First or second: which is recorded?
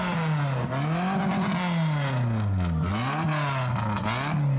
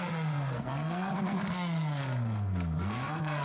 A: first